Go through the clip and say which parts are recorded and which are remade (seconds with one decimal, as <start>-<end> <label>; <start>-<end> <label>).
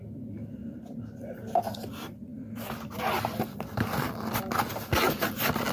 0.0-0.6 recorded; 0.6-1.6 remade; 1.6-5.7 recorded